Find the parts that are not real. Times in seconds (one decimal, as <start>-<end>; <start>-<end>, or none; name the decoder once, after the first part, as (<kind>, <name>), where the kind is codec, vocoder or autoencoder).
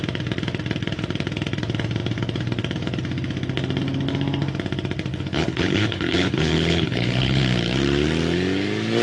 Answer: 5.1-7.4 (codec, HILCodec)